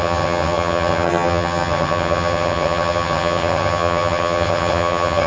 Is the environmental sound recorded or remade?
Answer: remade